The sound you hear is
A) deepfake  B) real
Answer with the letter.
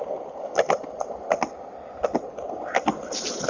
B